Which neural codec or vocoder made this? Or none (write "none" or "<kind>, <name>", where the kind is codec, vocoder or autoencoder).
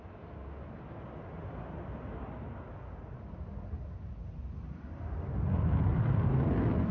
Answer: none